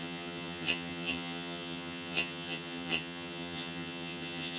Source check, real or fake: fake